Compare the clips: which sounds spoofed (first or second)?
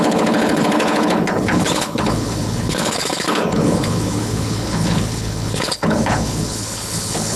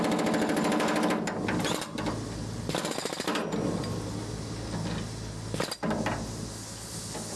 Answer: first